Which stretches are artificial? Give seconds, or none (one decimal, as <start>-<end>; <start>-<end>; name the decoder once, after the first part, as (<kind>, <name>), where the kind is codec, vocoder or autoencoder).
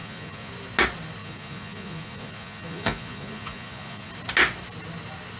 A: 0.0-0.5 (vocoder, Vocos); 1.2-4.1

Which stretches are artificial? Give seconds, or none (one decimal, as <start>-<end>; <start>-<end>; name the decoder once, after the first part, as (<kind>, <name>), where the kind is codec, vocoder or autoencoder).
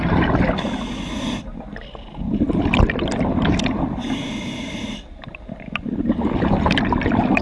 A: none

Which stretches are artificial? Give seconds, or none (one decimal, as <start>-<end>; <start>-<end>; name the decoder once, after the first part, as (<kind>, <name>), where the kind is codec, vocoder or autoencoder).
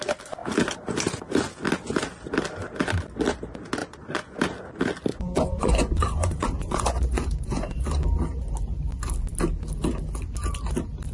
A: 3.8-4.4 (vocoder, Vocos); 5.1-7.8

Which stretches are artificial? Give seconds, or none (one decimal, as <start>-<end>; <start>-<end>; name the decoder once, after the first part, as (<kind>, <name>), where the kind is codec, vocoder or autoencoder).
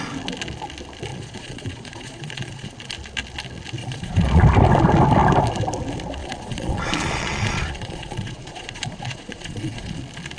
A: 1.1-2.7 (vocoder, Vocos); 3.8-4.4; 6.2-10.0